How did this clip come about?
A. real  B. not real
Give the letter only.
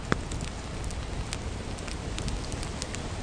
A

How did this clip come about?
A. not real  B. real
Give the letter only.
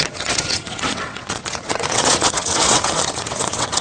A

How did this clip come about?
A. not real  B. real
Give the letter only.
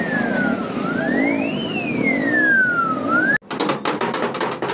B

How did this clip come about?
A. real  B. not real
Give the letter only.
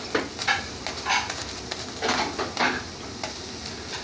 A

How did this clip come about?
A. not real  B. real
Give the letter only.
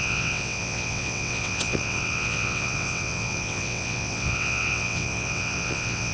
A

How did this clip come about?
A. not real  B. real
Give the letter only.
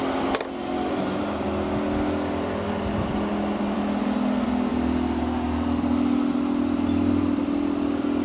B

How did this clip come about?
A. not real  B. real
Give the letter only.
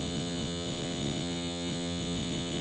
A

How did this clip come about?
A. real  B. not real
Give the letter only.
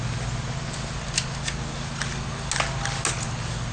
A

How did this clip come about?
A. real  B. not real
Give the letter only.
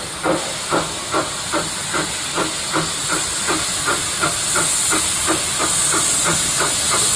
A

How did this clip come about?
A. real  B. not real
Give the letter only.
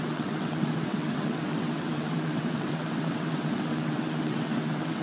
B